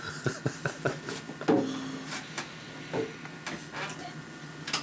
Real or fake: real